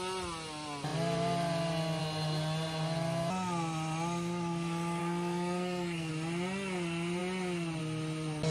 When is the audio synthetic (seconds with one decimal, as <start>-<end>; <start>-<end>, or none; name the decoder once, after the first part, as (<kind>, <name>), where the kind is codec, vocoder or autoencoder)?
5.0-6.1 (codec, SNAC)